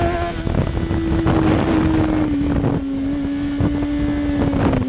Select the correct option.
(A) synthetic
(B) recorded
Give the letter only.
B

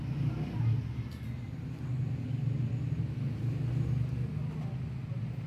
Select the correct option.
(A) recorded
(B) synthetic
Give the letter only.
A